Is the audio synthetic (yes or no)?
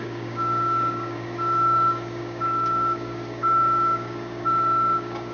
yes